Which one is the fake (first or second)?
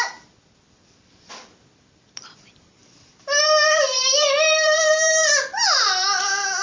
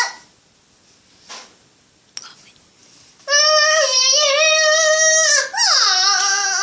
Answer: first